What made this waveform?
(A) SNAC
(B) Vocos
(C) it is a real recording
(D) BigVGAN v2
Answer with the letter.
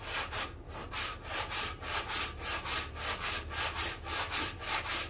C